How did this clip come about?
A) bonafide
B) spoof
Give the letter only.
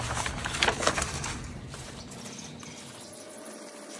A